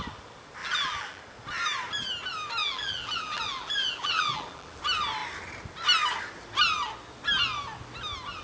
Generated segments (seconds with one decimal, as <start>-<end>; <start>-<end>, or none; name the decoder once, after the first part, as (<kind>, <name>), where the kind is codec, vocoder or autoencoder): 0.6-1.2 (vocoder, BigVGAN v2); 2.6-4.8